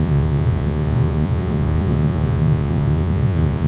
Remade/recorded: remade